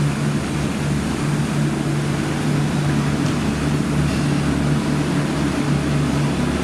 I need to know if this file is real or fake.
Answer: real